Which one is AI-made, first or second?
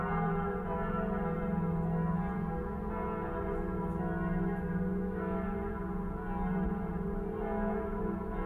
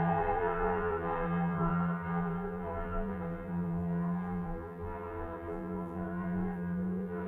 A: second